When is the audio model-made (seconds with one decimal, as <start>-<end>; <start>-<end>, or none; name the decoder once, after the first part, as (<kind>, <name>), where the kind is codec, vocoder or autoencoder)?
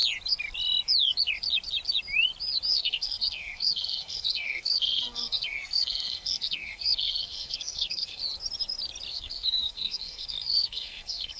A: 2.7-8.2 (codec, SNAC); 9.1-11.4